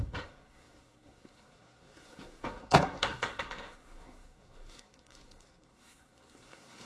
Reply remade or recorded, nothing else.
remade